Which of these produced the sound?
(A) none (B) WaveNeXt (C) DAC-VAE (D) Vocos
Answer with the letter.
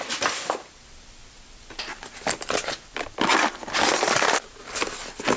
A